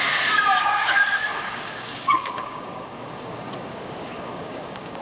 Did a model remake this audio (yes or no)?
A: yes